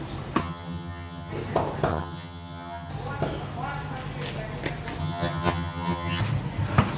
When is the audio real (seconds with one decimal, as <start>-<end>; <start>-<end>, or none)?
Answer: 0.0-0.4; 1.3-1.9; 2.9-5.0; 6.2-7.0